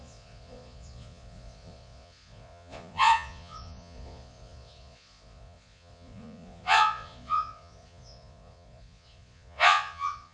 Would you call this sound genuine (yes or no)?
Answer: no